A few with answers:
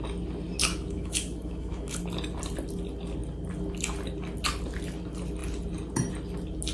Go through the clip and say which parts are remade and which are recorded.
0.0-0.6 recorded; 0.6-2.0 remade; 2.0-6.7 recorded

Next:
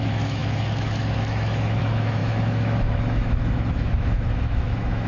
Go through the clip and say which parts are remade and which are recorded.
0.0-5.1 remade